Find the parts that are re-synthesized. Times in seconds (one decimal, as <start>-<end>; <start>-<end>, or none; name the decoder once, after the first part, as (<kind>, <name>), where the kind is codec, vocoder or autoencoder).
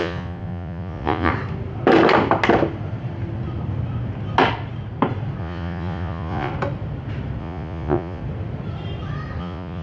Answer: 0.0-1.3 (vocoder, Vocos); 5.4-6.5; 7.4-8.2; 9.4-9.8